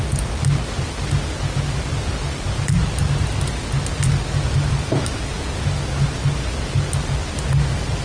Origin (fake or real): real